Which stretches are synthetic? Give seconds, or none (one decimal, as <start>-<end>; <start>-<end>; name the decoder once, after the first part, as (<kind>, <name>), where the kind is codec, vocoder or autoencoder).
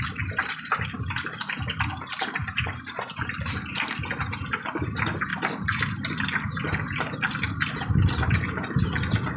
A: none